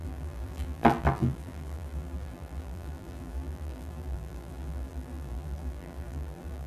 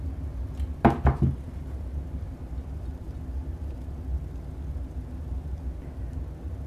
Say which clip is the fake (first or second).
first